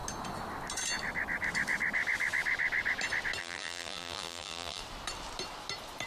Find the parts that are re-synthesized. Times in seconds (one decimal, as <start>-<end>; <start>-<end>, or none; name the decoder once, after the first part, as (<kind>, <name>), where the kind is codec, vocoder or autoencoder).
3.4-4.8 (vocoder, BigVGAN v2)